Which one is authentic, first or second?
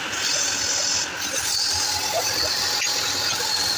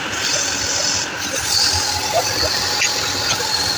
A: first